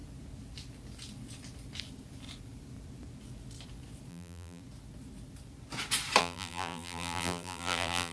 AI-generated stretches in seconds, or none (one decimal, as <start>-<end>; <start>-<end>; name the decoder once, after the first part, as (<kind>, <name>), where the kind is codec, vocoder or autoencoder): 4.1-4.6 (vocoder, BigVGAN v2); 6.2-8.1